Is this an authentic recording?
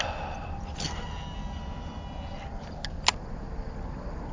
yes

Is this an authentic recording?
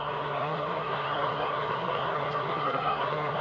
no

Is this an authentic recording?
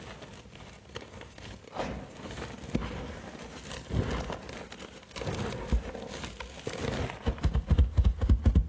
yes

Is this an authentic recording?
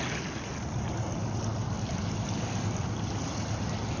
yes